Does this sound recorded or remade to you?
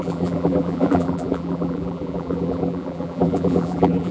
remade